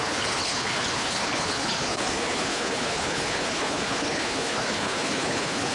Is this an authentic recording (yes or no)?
no